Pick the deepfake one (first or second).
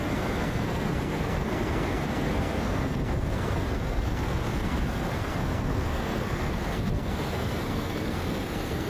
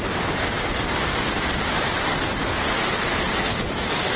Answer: first